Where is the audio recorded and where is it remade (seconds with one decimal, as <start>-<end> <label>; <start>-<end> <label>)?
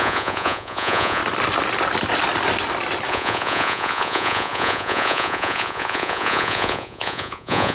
0.0-1.2 remade; 1.2-3.1 recorded; 3.1-7.7 remade